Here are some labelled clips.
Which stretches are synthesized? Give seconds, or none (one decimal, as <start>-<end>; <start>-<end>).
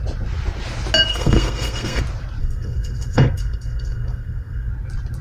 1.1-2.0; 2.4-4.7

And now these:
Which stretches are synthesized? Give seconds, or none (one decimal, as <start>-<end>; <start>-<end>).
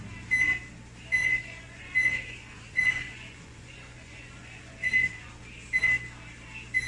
1.2-5.3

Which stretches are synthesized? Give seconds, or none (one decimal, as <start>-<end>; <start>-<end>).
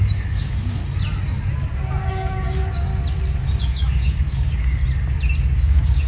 0.0-0.8; 2.1-2.9; 3.6-4.8; 5.6-6.1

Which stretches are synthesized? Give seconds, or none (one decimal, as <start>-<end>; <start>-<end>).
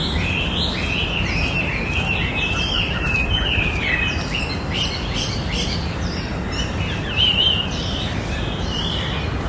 1.7-3.2; 4.4-6.3; 6.9-9.5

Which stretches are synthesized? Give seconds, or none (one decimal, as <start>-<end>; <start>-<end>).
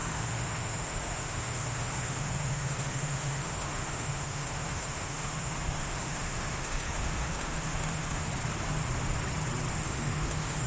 0.0-8.3; 9.7-10.7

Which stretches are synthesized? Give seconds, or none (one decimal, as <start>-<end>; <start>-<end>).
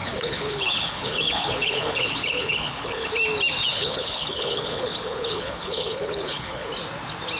0.0-3.1; 3.7-6.7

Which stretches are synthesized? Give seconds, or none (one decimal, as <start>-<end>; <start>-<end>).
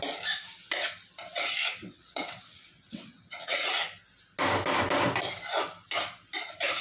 1.8-3.7